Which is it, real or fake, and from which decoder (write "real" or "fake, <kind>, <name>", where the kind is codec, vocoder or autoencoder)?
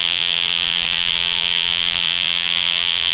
fake, vocoder, BigVGAN v2